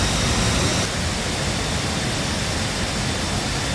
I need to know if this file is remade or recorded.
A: recorded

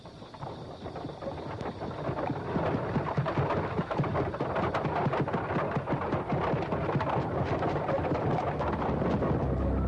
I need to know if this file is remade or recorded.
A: recorded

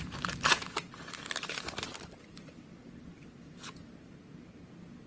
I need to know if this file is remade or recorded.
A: remade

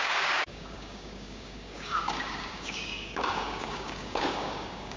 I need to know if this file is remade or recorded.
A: remade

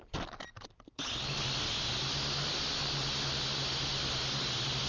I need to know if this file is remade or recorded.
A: recorded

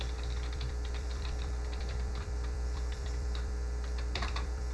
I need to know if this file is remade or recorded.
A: remade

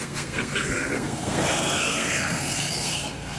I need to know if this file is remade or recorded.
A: remade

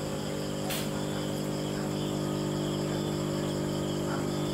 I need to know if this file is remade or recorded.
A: recorded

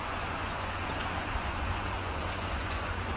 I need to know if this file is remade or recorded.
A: remade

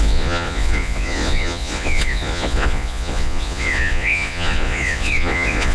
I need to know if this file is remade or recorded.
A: remade